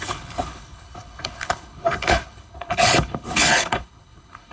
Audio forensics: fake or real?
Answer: fake